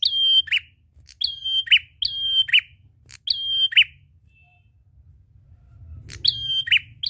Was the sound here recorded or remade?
recorded